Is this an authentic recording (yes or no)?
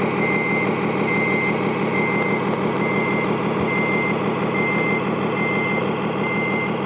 yes